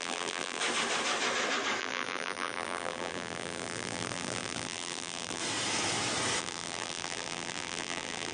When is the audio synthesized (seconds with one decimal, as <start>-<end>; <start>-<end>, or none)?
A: 0.0-0.6; 1.8-5.4; 6.4-8.3